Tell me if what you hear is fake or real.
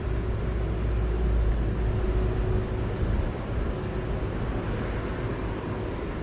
real